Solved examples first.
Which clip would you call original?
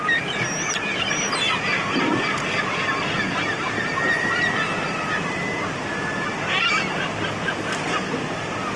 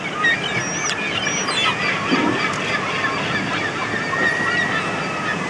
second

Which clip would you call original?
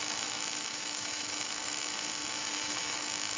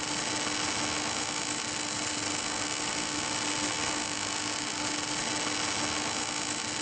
second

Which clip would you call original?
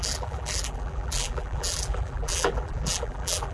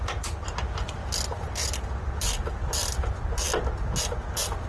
second